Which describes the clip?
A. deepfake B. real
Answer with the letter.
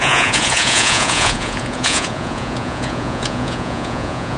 A